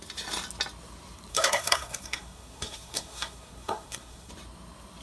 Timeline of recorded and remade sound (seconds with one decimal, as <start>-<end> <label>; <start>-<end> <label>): 0.0-1.3 recorded; 1.3-4.3 remade; 4.3-5.0 recorded